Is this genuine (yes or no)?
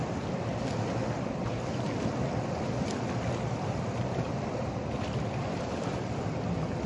no